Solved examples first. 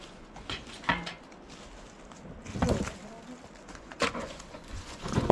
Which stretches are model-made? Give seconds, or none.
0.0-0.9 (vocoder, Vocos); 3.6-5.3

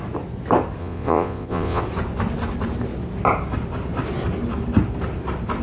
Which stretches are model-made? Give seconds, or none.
0.8-1.8 (vocoder, Vocos)

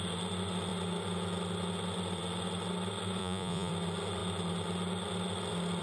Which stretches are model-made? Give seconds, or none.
3.2-3.7 (vocoder, Vocos)

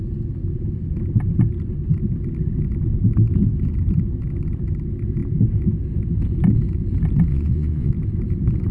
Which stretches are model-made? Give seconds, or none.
7.3-7.9 (vocoder, Vocos)

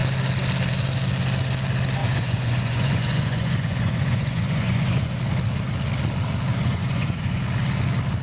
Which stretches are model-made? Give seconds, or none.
2.0-5.2 (vocoder, Vocos); 6.5-7.4

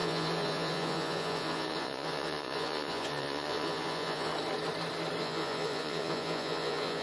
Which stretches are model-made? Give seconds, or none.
0.0-4.3 (vocoder, Vocos); 5.2-7.0